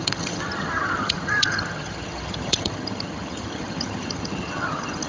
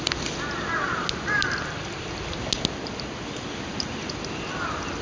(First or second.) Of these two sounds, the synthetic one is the first